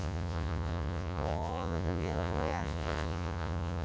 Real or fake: fake